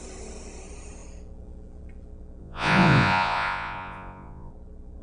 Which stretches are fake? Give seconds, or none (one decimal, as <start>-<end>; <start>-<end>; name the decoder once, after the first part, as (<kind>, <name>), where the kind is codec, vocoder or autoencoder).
2.4-4.5 (vocoder, Vocos)